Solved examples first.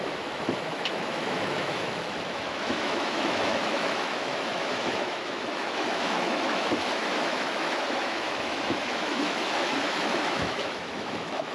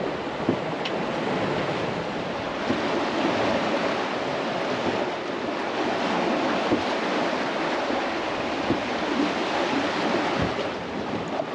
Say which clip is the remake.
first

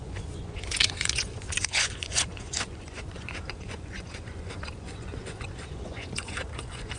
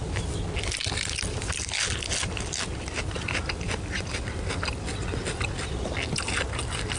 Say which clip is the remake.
first